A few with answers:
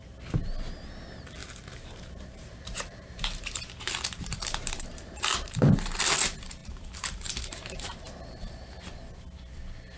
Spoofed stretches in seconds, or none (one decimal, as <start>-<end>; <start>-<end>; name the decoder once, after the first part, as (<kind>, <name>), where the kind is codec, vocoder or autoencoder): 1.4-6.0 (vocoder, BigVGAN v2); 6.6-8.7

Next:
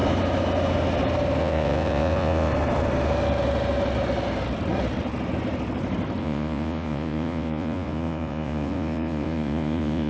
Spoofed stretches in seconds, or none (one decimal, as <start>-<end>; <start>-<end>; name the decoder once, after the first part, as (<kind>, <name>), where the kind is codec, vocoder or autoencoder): 1.4-2.5 (vocoder, Vocos); 6.2-10.1

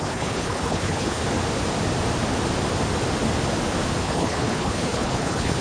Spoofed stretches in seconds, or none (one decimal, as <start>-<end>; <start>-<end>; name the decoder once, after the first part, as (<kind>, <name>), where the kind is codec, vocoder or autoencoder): 0.0-1.2 (codec, HILCodec); 4.0-5.6